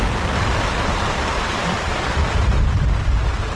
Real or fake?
fake